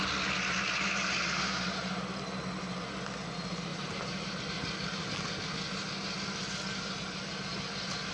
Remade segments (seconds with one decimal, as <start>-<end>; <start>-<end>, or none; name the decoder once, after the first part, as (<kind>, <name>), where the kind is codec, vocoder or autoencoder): 3.7-4.4 (vocoder, BigVGAN v2)